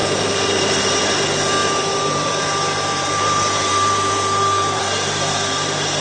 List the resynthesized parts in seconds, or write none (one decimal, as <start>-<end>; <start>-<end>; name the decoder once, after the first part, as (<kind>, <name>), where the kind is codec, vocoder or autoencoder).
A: 0.0-1.0 (vocoder, BigVGAN v2); 1.6-4.8